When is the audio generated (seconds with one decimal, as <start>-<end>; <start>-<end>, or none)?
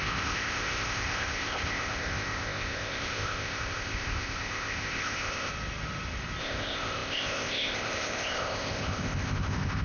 0.0-5.5; 6.4-9.8